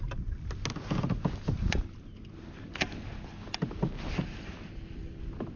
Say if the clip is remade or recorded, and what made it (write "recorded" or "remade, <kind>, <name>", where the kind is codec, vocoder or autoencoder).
recorded